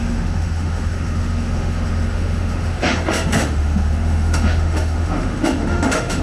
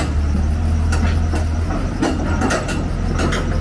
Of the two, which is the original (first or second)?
second